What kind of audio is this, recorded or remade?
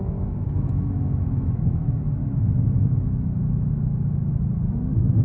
remade